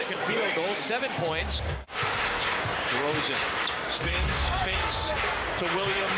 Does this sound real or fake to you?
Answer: fake